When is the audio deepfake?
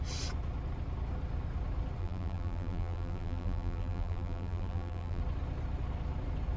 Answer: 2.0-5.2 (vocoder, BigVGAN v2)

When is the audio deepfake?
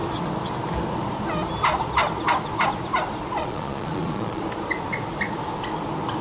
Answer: 3.4-4.4 (vocoder, Vocos)